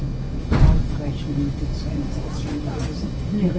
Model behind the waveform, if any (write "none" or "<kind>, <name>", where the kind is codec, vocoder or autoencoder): none